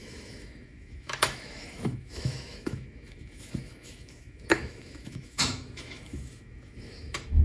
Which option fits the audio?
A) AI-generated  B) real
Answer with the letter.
A